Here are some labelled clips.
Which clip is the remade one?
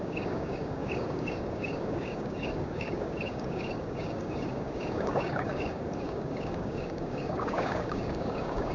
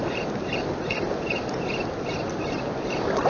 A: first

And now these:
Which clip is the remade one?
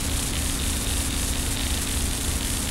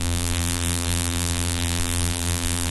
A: second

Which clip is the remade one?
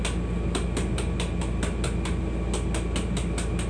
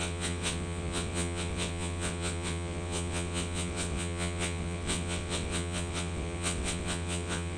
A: second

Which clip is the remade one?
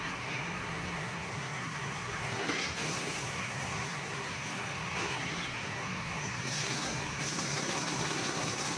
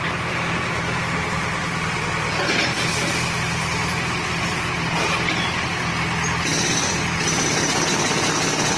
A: first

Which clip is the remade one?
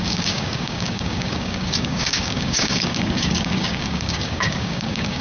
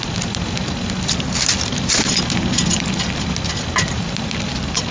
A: first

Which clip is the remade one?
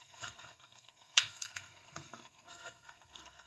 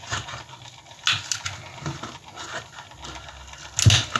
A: first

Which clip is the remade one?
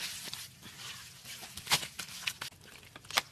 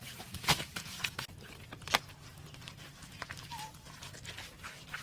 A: second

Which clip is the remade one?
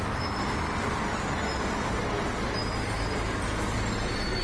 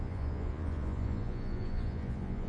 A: second